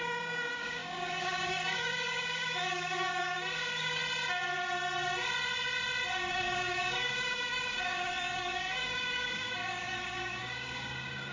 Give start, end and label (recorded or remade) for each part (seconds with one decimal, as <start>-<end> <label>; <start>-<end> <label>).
0.0-4.0 remade; 4.0-6.3 recorded; 6.3-11.3 remade